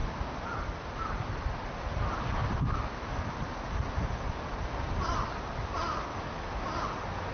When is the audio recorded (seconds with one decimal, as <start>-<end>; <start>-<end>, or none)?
0.0-6.1; 6.6-7.3